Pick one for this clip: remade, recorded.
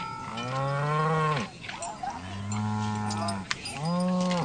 recorded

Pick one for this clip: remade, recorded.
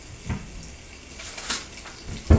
recorded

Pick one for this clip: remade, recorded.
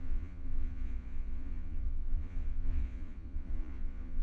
remade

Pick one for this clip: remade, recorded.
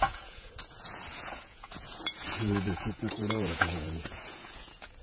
remade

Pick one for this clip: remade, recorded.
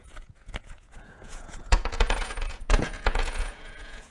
remade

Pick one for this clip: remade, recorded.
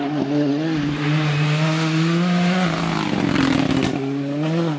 recorded